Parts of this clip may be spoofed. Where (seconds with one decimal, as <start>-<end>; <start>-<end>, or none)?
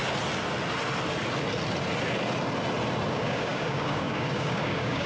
3.1-5.1